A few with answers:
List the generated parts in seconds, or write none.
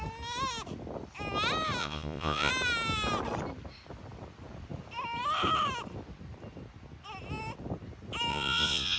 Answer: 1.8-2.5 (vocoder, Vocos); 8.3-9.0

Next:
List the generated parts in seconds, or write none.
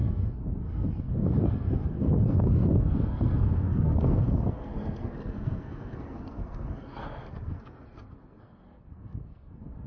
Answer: 0.0-9.9 (codec, SNAC)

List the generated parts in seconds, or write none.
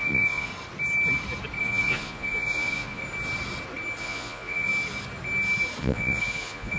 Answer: 0.0-0.5 (vocoder, Vocos); 1.6-3.0; 4.0-4.7; 5.8-6.8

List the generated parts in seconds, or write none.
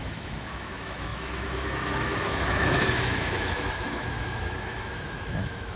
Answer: 0.0-5.8 (autoencoder, DAC-VAE)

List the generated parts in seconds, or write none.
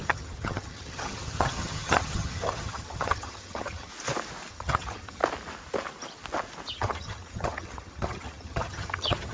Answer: 0.0-3.9 (vocoder, HiFi-GAN); 4.5-5.2; 6.7-9.3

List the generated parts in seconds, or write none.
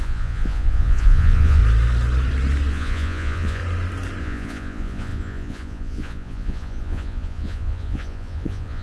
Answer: 0.0-1.6 (vocoder, Vocos); 2.7-3.6; 4.2-8.8